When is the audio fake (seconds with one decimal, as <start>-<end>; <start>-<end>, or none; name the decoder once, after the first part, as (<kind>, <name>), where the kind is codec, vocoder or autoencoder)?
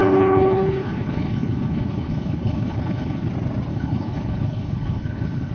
0.0-3.3 (codec, HILCodec); 3.7-5.5